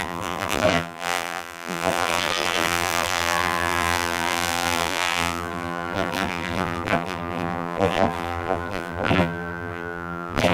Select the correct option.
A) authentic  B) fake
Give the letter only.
B